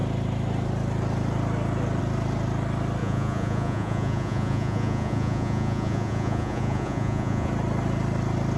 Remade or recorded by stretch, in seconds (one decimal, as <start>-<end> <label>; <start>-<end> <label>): 0.0-3.0 recorded; 3.0-7.5 remade; 7.5-8.6 recorded